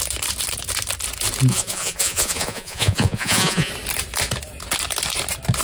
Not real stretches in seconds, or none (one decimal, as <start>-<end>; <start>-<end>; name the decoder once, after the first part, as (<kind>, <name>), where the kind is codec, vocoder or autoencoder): 1.5-3.7 (vocoder, Vocos)